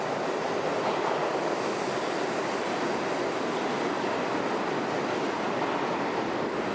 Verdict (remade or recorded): recorded